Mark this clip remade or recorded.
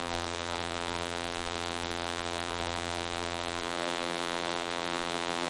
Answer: remade